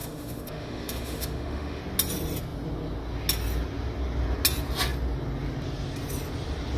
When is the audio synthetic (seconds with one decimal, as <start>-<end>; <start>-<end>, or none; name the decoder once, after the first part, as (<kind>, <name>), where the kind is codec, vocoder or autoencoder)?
0.0-1.8 (autoencoder, DAC-VAE)